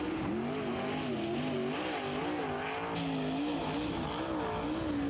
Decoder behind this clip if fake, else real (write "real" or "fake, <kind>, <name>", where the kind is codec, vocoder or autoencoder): real